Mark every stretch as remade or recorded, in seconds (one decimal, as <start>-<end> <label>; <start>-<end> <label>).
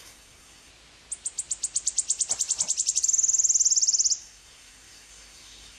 0.0-0.7 remade; 0.7-4.2 recorded; 4.2-5.8 remade